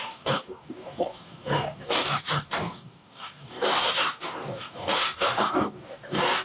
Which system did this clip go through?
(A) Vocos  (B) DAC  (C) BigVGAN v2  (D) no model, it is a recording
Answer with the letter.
B